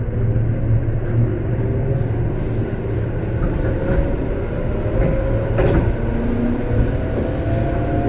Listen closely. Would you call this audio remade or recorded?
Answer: recorded